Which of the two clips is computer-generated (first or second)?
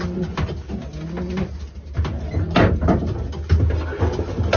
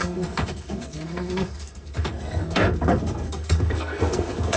second